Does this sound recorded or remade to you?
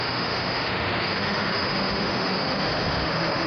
remade